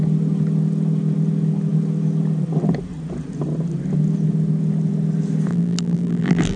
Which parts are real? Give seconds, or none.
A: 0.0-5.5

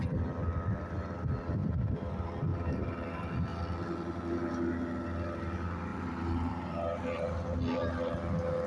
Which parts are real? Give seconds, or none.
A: 0.0-1.6; 2.1-2.5; 3.1-5.9; 6.5-8.7

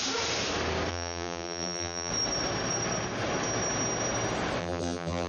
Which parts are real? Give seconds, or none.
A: 0.0-0.9; 2.1-4.6